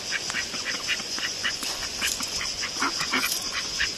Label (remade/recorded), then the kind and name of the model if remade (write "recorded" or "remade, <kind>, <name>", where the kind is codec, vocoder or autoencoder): remade, vocoder, Vocos